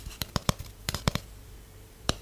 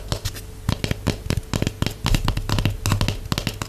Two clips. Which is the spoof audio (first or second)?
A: first